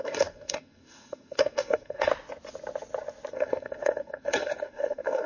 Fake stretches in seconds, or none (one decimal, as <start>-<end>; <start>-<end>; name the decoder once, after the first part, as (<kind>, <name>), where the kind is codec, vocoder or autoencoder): 0.0-2.1 (codec, SNAC); 3.3-5.3